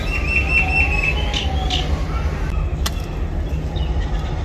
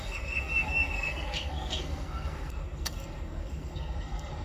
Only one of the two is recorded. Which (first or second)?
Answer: first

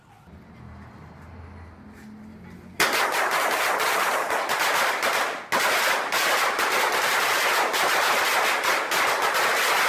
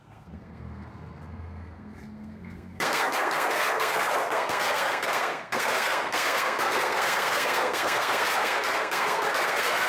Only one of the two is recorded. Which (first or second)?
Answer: first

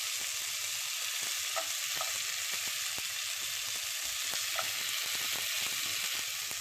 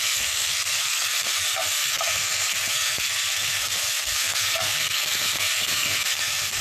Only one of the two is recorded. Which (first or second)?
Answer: first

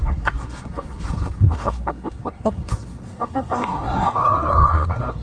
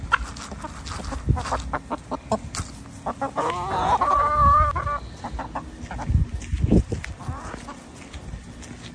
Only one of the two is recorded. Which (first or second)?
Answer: second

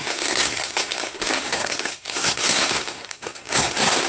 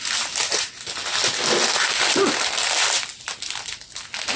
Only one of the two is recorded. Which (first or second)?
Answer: second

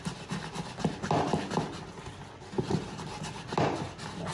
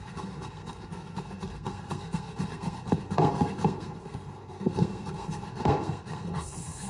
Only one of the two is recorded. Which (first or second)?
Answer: first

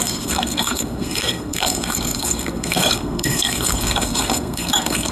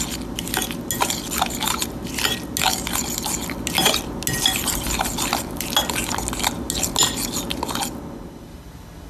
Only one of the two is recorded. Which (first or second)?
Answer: second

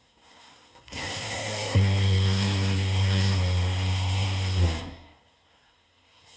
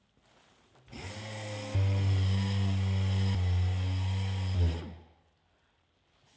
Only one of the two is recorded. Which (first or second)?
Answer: second